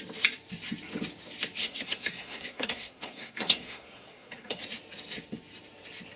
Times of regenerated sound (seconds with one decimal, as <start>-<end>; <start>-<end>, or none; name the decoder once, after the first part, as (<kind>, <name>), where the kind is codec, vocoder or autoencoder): 1.6-4.6 (codec, SNAC)